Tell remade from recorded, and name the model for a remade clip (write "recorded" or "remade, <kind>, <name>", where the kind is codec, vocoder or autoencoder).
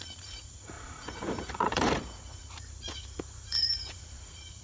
remade, vocoder, Vocos